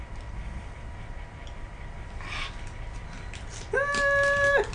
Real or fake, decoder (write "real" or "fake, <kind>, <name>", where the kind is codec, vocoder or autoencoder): real